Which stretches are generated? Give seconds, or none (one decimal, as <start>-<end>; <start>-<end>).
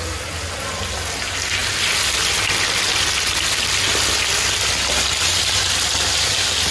none